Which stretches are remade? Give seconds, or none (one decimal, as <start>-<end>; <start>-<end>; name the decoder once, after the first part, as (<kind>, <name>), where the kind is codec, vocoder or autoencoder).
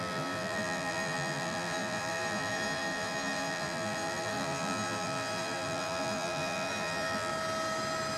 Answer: 0.0-7.3 (vocoder, BigVGAN v2)